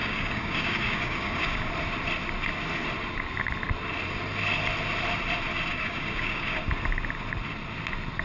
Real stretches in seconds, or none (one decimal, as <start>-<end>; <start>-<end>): 1.7-5.7; 6.7-8.2